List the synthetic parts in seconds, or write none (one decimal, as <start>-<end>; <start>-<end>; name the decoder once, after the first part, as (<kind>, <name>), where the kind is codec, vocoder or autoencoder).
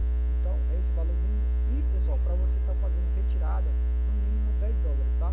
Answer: 1.8-2.8 (codec, DAC)